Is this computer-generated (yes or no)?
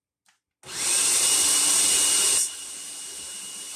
no